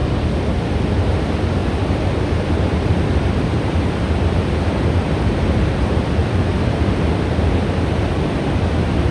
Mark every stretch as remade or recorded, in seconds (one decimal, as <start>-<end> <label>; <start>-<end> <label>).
0.0-0.7 recorded; 0.7-9.1 remade